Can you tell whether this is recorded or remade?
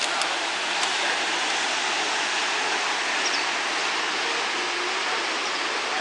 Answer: recorded